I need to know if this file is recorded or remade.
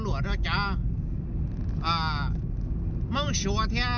recorded